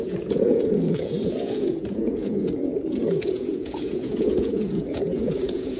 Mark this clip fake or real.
fake